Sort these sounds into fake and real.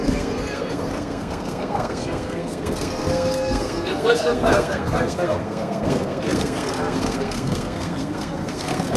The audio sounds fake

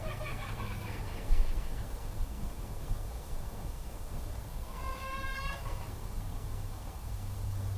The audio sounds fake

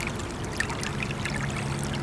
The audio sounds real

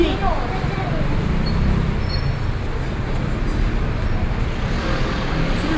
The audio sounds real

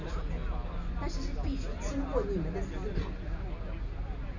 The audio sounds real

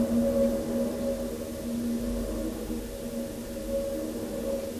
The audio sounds real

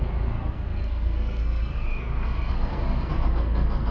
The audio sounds fake